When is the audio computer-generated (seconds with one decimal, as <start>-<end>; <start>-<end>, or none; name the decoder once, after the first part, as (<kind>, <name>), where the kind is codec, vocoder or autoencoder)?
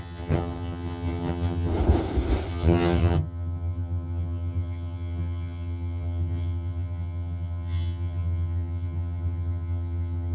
0.0-1.7 (vocoder, HiFi-GAN); 2.5-10.3